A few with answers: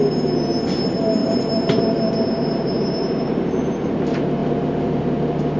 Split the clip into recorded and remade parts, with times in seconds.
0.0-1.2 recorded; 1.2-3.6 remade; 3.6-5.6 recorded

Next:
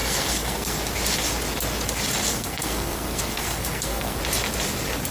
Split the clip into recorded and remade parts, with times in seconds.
0.0-0.8 remade; 0.8-2.3 recorded; 2.3-4.2 remade; 4.2-5.1 recorded

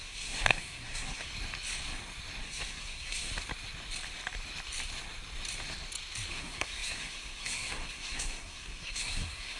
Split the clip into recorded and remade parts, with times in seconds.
0.0-1.3 remade; 1.3-2.4 recorded; 2.4-3.3 remade; 3.3-6.3 recorded; 6.3-9.6 remade

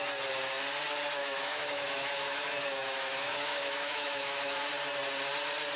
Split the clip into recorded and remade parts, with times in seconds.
0.0-1.2 recorded; 1.2-4.7 remade; 4.7-5.8 recorded

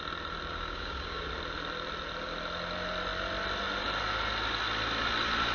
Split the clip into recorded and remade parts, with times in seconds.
0.0-0.5 recorded; 0.5-1.3 remade; 1.3-5.5 recorded

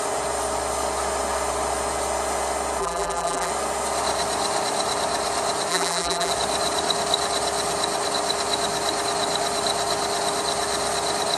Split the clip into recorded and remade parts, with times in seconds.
0.0-2.8 recorded; 2.8-3.5 remade; 3.5-5.7 recorded; 5.7-6.3 remade; 6.3-11.4 recorded

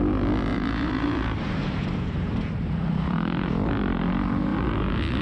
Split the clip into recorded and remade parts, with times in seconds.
0.0-0.5 recorded; 0.5-3.5 remade; 3.5-4.5 recorded; 4.5-5.2 remade